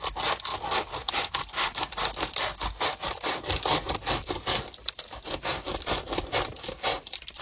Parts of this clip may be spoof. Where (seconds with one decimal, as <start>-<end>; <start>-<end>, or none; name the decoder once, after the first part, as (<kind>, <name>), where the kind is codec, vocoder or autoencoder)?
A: none